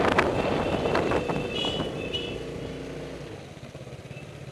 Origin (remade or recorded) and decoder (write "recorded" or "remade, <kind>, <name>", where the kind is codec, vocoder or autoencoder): recorded